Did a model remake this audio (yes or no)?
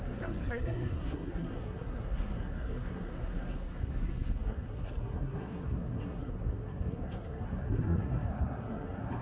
yes